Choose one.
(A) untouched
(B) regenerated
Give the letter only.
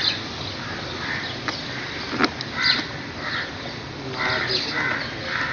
A